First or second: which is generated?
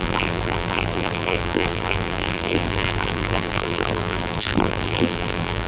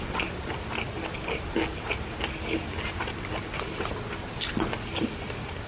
first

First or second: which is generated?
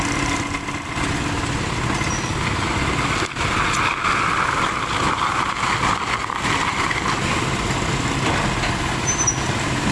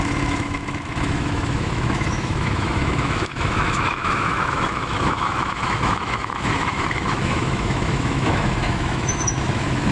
second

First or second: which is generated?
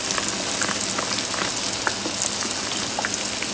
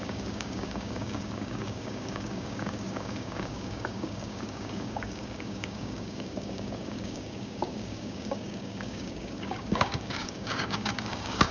second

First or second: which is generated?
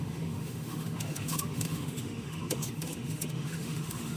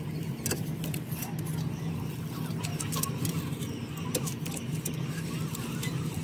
first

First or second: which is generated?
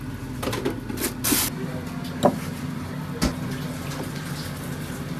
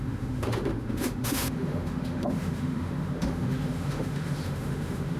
second